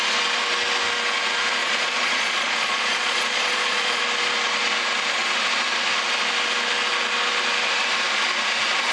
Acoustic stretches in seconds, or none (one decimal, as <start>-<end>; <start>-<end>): 0.0-1.6; 4.0-8.9